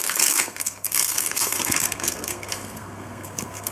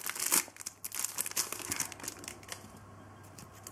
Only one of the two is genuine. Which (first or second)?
second